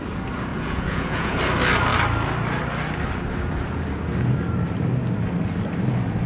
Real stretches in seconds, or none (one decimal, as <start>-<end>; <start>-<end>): 0.0-0.5; 1.4-6.3